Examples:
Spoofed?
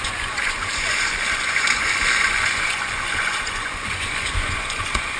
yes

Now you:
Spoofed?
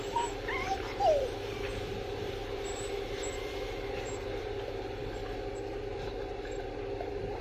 yes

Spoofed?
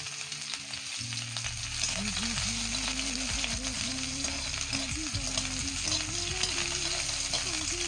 no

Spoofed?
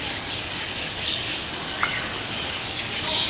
yes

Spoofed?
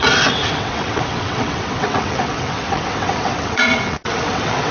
yes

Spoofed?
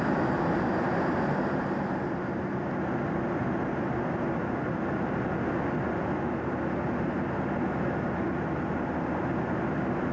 no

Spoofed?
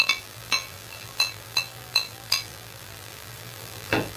yes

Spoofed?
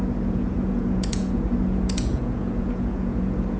yes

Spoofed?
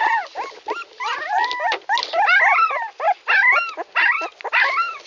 no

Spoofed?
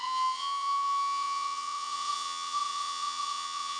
yes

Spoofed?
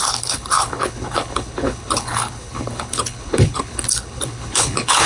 yes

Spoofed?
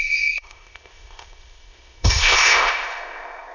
yes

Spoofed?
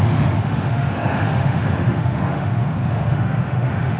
yes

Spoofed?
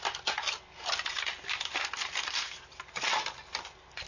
no